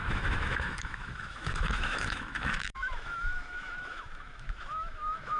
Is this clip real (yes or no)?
no